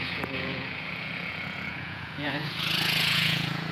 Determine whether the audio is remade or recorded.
remade